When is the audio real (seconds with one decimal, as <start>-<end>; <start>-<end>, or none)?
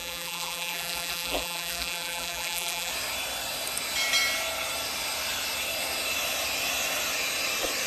2.9-7.9